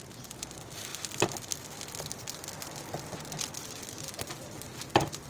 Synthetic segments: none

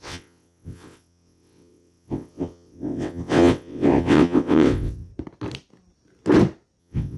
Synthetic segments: 0.0-5.1 (vocoder, WaveNeXt); 6.8-7.2

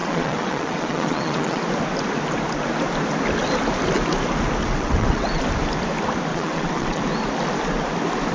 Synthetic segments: 0.0-1.6 (vocoder, WaveNeXt); 4.6-5.4; 6.3-7.0